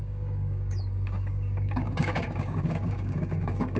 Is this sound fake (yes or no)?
yes